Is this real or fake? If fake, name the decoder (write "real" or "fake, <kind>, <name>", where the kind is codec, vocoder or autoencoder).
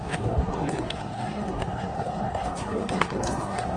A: fake, codec, SNAC